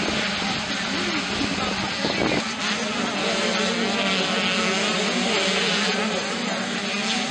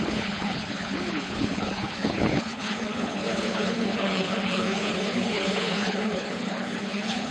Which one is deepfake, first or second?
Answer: second